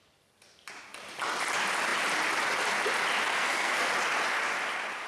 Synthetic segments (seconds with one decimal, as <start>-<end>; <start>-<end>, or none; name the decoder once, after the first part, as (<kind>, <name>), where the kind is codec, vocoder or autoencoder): 3.3-3.9 (codec, SNAC)